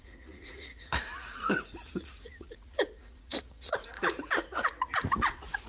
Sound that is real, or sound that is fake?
fake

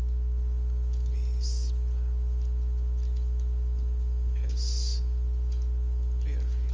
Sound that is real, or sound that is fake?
real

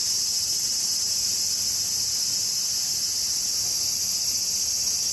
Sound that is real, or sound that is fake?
real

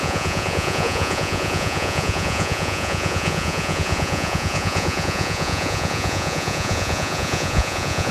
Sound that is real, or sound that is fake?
fake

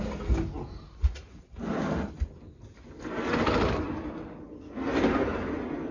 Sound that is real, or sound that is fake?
real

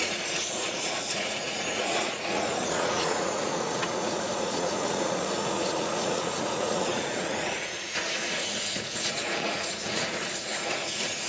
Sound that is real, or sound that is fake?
fake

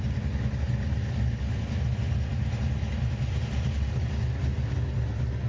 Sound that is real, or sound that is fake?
real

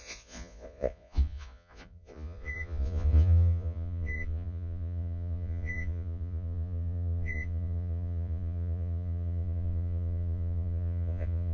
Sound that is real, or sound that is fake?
fake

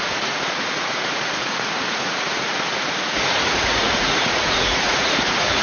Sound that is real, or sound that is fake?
fake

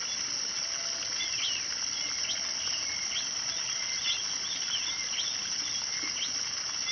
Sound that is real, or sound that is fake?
real